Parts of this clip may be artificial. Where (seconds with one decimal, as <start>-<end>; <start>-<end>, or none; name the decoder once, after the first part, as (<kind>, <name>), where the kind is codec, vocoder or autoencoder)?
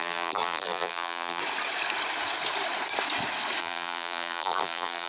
0.0-1.4 (vocoder, BigVGAN v2); 3.6-5.1